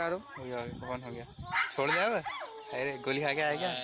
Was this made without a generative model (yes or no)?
yes